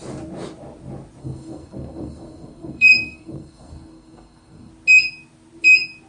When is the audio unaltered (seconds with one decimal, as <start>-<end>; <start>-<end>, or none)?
0.0-1.2; 4.7-6.1